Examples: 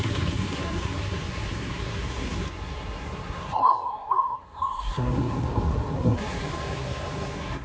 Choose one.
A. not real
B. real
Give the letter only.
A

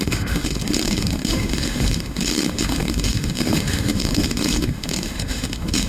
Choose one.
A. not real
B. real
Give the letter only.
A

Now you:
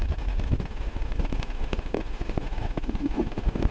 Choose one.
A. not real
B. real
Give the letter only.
A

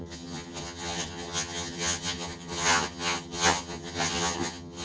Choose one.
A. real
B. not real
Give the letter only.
B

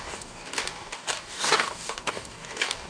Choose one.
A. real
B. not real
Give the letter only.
B